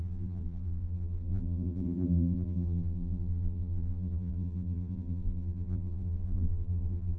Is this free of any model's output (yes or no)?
no